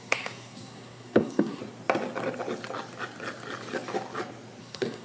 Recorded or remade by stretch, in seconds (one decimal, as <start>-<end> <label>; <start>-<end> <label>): 0.0-1.6 remade; 1.6-4.6 recorded; 4.6-5.0 remade